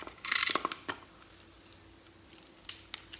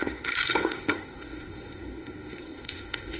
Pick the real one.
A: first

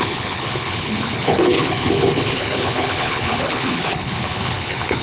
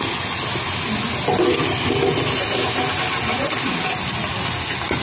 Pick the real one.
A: second